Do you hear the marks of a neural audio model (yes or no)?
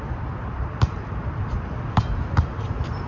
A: yes